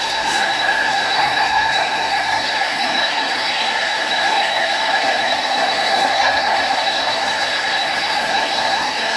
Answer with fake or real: fake